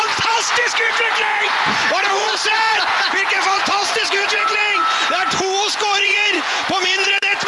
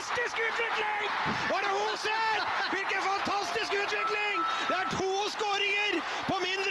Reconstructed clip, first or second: first